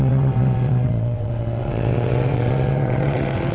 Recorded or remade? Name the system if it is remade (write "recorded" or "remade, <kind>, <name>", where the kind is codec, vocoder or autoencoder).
remade, vocoder, WaveNeXt